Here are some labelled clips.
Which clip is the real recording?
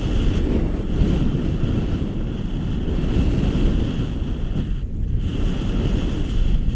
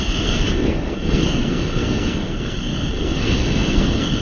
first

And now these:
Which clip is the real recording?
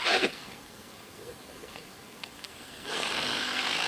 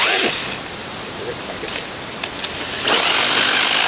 second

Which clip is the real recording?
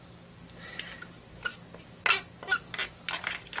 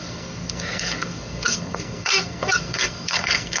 first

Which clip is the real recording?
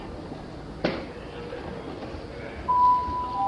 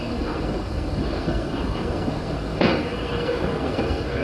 first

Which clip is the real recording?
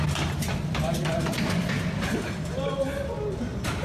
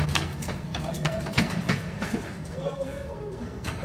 first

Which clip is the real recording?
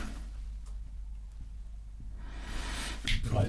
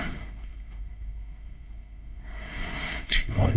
first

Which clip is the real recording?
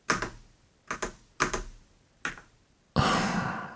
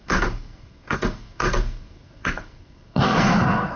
first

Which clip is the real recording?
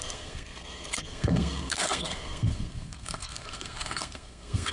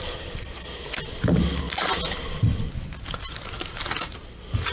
second